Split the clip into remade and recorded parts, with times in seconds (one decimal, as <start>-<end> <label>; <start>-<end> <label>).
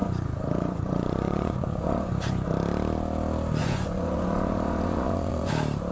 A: 0.0-2.5 remade; 2.5-3.6 recorded; 3.6-5.5 remade; 5.5-5.9 recorded